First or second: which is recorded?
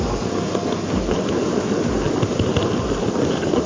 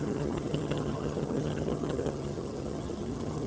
first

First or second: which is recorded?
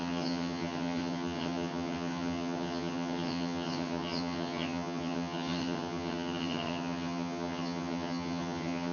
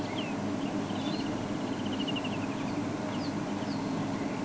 second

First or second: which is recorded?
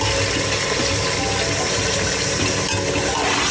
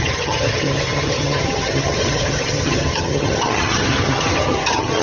first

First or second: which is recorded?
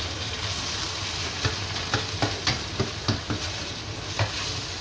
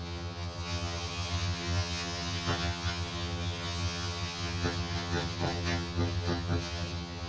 first